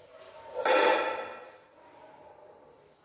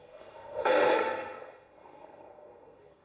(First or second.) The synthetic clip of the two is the second